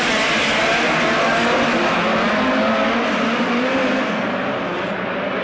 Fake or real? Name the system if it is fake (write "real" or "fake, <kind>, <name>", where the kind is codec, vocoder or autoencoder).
real